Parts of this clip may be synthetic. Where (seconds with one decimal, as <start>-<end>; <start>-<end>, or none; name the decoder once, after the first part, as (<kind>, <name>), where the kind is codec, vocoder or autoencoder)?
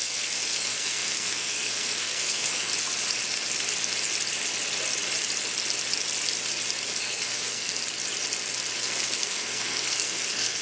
0.0-2.7 (codec, SNAC); 7.0-7.8; 8.8-10.6